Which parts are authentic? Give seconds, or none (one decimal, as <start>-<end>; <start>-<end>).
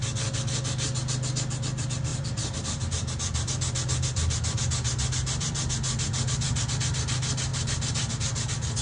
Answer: 0.0-2.1; 6.7-8.8